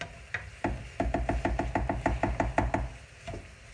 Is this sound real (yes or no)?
yes